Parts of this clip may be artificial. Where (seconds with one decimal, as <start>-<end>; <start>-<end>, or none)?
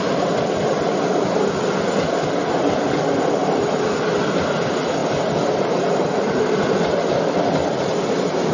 3.4-4.4; 5.0-7.5